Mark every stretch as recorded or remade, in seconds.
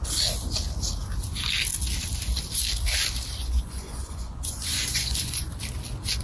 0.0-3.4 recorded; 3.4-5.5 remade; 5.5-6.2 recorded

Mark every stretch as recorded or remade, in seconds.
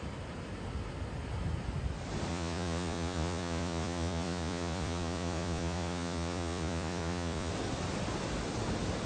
0.0-2.3 recorded; 2.3-7.5 remade; 7.5-9.1 recorded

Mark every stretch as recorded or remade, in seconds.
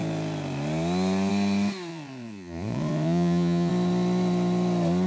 0.0-1.9 recorded; 1.9-3.7 remade; 3.7-5.1 recorded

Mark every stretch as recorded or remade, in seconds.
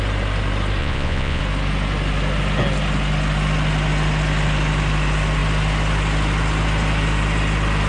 0.0-0.8 recorded; 0.8-1.4 remade; 1.4-7.9 recorded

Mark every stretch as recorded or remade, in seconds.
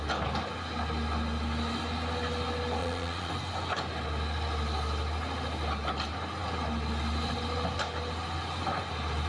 0.0-2.8 recorded; 2.8-3.3 remade; 3.3-9.3 recorded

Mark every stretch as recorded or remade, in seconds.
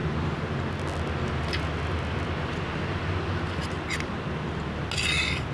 0.0-5.5 recorded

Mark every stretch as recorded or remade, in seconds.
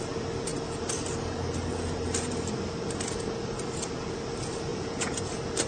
0.0-4.7 recorded; 4.7-5.3 remade; 5.3-5.7 recorded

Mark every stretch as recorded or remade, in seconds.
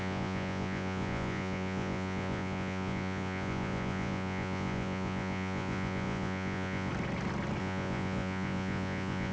0.0-6.9 remade; 6.9-7.6 recorded; 7.6-9.3 remade